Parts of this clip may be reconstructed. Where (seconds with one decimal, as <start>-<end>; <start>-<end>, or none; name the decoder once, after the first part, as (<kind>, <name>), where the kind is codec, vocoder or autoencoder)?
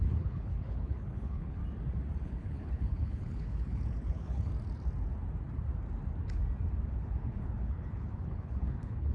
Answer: 0.0-1.6 (codec, HILCodec); 2.2-4.5; 6.9-9.1